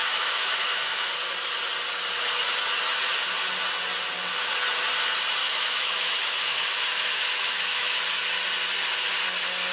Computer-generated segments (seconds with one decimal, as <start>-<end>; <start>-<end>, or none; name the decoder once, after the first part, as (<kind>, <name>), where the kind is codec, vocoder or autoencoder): 0.0-1.1 (autoencoder, DAC-VAE); 5.4-8.0